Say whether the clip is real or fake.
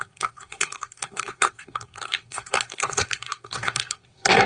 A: fake